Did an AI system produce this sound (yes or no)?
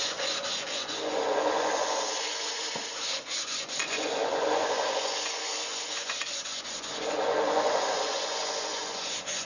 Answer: yes